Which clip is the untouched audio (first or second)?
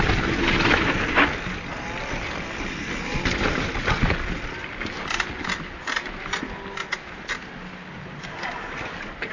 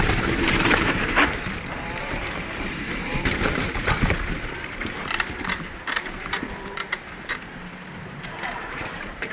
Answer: first